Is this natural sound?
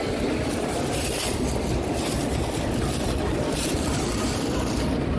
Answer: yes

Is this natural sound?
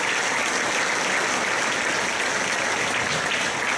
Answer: yes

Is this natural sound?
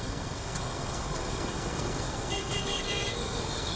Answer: no